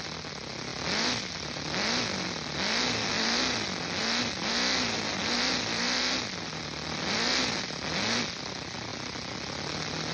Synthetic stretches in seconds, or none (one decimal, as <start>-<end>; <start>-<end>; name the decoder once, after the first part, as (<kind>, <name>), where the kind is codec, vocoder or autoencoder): none